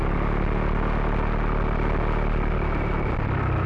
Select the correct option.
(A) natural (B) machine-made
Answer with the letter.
A